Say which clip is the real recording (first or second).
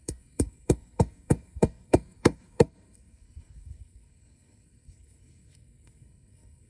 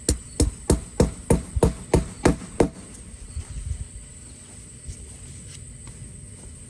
second